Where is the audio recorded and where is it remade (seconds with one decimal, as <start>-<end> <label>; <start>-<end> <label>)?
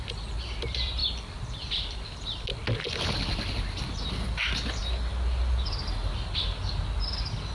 0.0-7.5 recorded